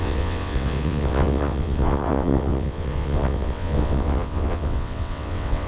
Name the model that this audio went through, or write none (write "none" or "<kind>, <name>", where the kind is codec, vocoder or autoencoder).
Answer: vocoder, WaveNeXt